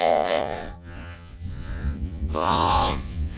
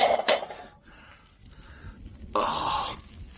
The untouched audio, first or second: second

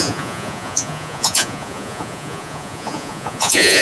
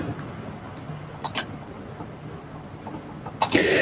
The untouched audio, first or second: second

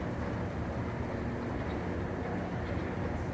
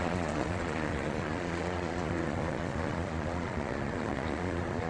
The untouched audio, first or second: first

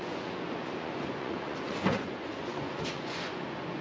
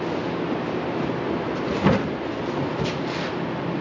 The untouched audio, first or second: second